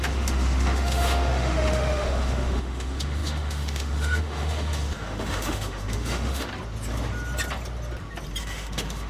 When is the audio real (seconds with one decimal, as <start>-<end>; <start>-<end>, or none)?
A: 6.5-8.4